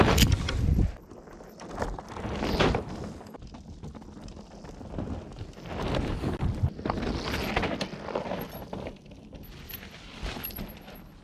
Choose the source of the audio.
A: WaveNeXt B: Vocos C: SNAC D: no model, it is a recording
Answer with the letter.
D